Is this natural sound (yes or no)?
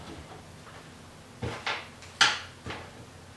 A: yes